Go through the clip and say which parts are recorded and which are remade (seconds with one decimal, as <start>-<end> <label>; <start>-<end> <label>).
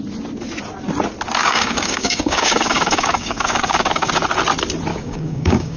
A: 0.0-1.4 recorded; 1.4-4.1 remade; 4.1-4.9 recorded; 4.9-5.8 remade